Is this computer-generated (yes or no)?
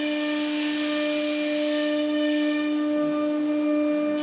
no